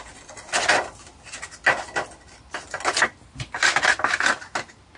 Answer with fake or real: real